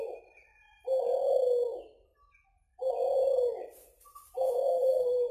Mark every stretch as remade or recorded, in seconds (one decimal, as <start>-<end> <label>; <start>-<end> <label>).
0.0-4.7 recorded; 4.7-5.3 remade